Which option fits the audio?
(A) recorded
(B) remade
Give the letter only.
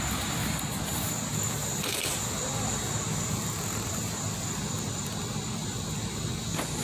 A